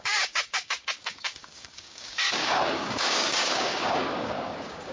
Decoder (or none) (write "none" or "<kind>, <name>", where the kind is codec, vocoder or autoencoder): codec, DAC